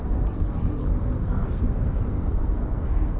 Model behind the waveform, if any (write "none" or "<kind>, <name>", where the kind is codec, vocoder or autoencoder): codec, SNAC